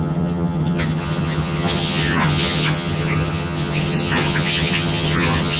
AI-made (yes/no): yes